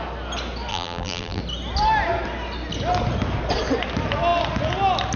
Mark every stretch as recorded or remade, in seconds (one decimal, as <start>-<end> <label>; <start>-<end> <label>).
0.0-0.7 recorded; 0.7-1.4 remade; 1.4-5.2 recorded